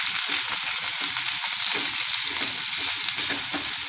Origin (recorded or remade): recorded